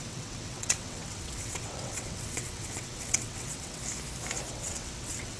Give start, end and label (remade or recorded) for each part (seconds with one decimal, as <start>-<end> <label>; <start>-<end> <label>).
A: 0.0-3.8 remade; 3.8-4.5 recorded; 4.5-5.4 remade